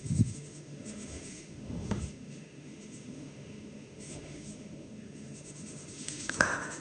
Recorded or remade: remade